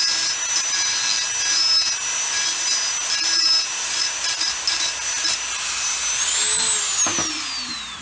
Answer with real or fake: real